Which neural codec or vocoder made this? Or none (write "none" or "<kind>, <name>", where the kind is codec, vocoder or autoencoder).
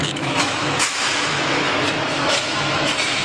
autoencoder, DAC-VAE